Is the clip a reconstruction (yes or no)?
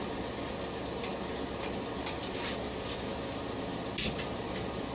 no